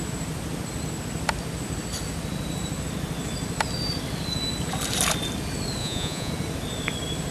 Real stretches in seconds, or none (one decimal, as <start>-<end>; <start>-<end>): 0.0-5.8; 6.3-7.3